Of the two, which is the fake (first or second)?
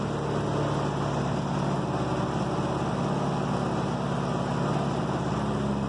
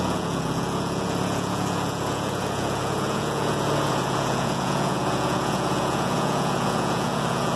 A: second